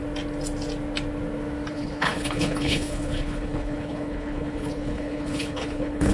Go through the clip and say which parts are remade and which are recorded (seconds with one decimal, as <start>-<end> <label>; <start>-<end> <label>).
0.0-1.7 recorded; 1.7-6.1 remade